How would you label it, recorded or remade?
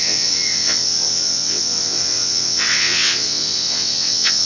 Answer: remade